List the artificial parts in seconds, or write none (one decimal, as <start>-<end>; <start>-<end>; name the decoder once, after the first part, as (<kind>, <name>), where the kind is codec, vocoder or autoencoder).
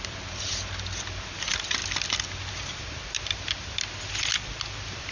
none